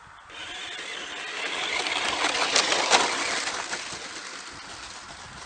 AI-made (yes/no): no